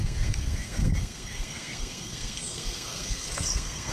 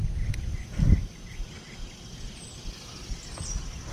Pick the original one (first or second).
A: second